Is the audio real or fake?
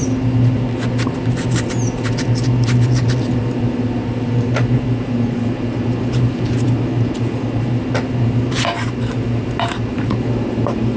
real